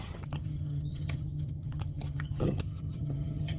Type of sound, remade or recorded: remade